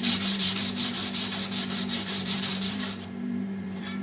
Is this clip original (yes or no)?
no